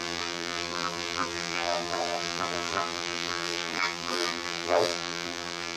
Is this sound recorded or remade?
remade